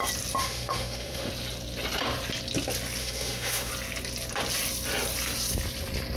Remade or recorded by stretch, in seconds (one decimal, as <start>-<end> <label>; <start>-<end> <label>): 0.0-0.4 recorded; 0.4-1.3 remade; 1.3-3.0 recorded; 3.0-3.7 remade; 3.7-6.2 recorded